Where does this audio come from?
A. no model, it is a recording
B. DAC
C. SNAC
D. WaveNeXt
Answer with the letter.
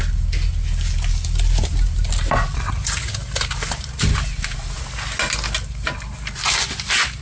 A